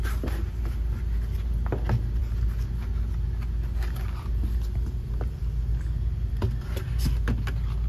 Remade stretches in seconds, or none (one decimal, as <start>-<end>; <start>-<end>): none